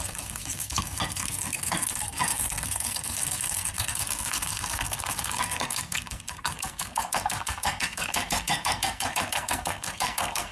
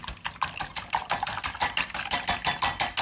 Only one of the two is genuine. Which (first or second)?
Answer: second